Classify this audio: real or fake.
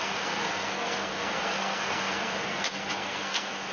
fake